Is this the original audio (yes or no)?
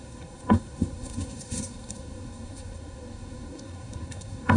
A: no